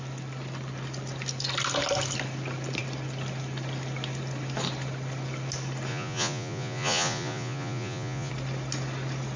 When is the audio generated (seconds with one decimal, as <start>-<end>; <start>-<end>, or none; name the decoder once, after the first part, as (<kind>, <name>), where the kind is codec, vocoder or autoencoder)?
5.9-8.3 (vocoder, Vocos)